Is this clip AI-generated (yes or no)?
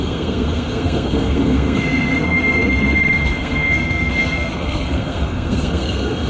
yes